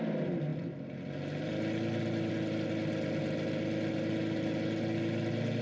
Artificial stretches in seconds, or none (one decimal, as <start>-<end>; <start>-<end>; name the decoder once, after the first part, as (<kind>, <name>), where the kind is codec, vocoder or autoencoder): none